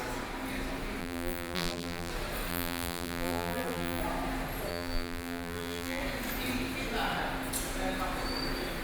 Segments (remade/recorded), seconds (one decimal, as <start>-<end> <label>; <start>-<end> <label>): 0.0-1.0 recorded; 1.0-2.1 remade; 2.1-2.5 recorded; 2.5-4.0 remade; 4.0-4.7 recorded; 4.7-6.0 remade; 6.0-8.8 recorded